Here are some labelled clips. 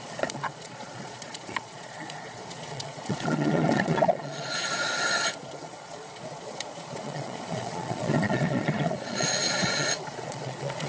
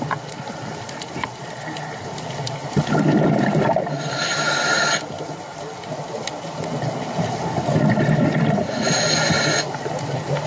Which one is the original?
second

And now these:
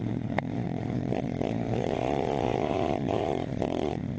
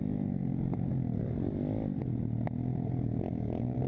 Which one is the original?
second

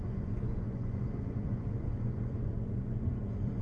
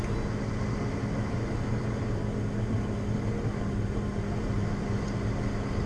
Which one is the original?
second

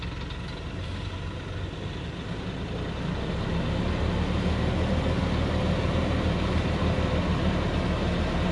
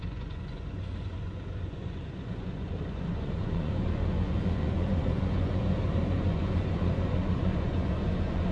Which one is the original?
first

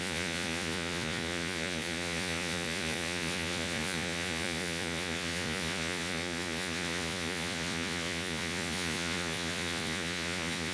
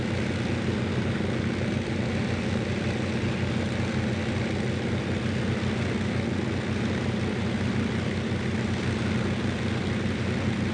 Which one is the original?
second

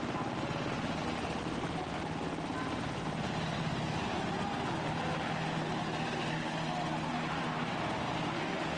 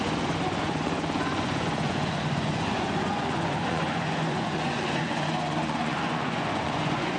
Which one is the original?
first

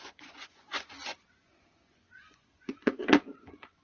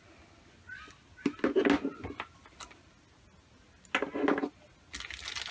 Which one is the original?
second